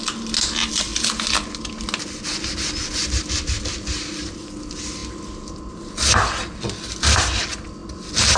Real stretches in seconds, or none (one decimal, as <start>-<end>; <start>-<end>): 0.0-8.4